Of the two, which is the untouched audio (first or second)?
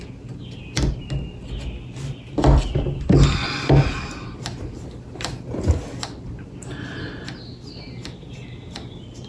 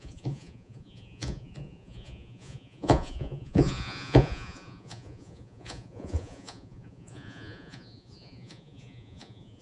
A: first